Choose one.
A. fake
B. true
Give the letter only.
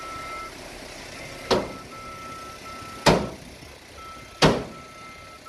B